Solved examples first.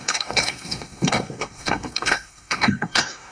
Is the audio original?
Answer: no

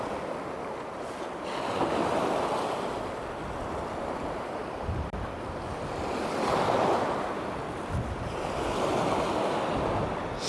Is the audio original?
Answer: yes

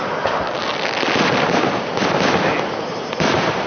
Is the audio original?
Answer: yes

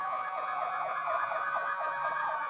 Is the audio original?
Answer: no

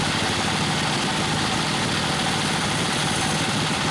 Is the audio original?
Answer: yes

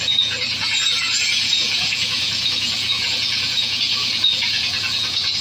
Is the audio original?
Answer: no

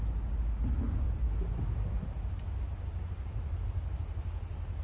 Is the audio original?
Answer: yes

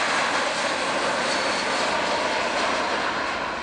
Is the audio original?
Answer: yes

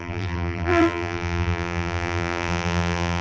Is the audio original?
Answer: no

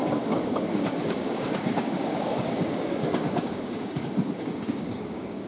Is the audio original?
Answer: no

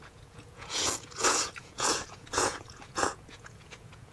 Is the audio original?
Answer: no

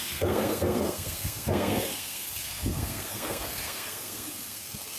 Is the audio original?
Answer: no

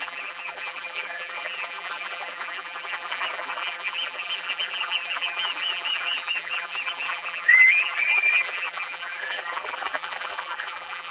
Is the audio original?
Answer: no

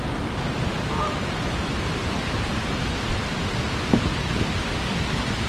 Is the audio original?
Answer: yes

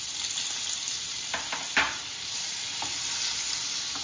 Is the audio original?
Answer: yes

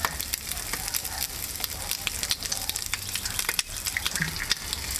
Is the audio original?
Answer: yes